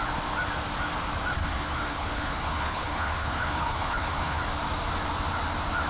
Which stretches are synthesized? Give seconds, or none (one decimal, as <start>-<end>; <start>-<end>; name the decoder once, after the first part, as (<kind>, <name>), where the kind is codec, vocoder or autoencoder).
1.4-4.4 (codec, HILCodec)

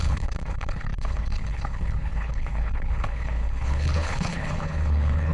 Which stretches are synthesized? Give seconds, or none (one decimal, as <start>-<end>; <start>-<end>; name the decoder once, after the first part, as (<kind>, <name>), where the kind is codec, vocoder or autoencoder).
0.0-5.3 (codec, HILCodec)

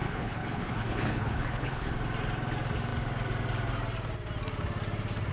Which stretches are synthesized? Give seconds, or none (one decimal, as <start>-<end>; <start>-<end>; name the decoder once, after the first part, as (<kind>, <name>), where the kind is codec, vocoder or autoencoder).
0.0-1.9 (codec, HILCodec)

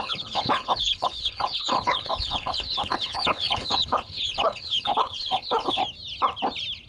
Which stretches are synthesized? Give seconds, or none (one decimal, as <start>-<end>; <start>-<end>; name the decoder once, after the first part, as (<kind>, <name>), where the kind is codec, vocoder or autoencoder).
0.0-5.8 (codec, HILCodec)

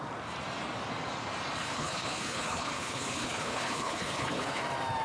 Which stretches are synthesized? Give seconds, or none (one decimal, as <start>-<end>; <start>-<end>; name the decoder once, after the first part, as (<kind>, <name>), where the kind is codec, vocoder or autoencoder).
1.6-4.6 (codec, HILCodec)

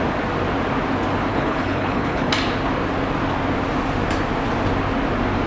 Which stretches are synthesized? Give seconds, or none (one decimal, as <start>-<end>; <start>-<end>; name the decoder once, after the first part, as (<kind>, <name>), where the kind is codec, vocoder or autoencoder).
1.3-2.3 (codec, HILCodec)

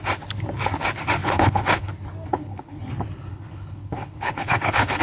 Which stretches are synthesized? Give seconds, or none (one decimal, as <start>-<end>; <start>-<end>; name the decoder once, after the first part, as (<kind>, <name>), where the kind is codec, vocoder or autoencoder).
1.2-1.9 (codec, HILCodec); 2.3-2.8; 3.3-5.0

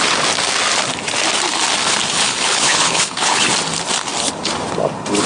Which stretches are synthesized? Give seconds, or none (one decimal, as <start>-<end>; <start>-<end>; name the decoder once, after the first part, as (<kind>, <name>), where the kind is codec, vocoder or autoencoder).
2.1-3.4 (codec, HILCodec)